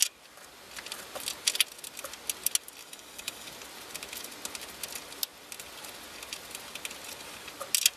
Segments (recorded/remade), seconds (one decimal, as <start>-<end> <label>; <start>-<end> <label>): 0.0-2.8 recorded; 2.8-3.5 remade; 3.5-8.0 recorded